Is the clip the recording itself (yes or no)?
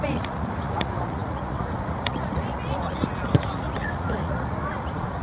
no